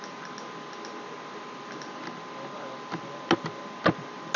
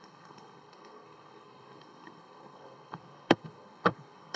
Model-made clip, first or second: second